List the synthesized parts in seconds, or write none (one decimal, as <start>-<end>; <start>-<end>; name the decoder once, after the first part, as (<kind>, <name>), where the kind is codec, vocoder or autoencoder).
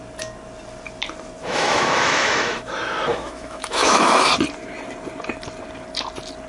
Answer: 1.4-2.7 (autoencoder, DAC-VAE); 3.1-4.3